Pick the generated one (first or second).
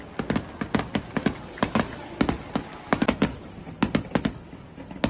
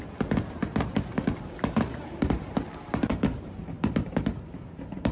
second